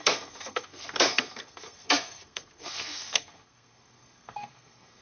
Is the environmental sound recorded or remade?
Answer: remade